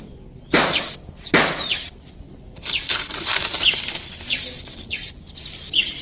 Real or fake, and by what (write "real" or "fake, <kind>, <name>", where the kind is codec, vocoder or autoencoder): real